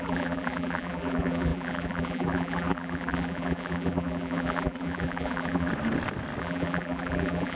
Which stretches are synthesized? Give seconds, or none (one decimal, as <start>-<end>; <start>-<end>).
0.0-5.7; 6.4-7.6